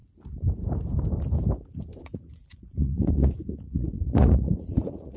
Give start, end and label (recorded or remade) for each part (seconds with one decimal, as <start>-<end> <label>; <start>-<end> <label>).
0.0-2.0 recorded; 2.0-5.2 remade